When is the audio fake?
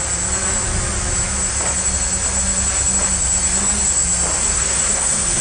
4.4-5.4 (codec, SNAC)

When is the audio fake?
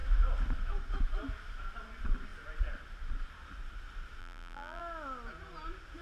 4.2-4.8 (vocoder, BigVGAN v2)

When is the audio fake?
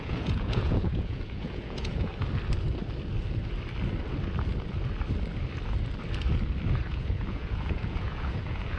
0.0-2.1 (vocoder, Vocos); 6.9-8.8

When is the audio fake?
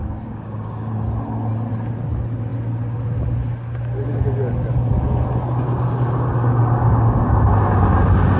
0.0-0.9 (codec, DAC); 6.8-7.5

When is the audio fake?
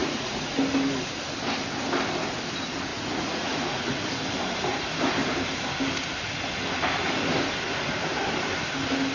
0.0-0.6 (vocoder, Vocos); 2.9-3.9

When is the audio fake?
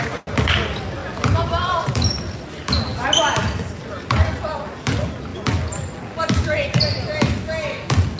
1.0-2.7 (vocoder, BigVGAN v2)